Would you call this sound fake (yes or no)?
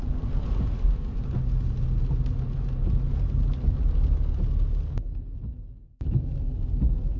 no